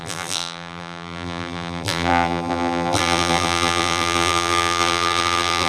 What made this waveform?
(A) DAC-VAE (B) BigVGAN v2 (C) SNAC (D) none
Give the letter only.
B